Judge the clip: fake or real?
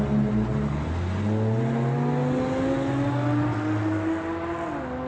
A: real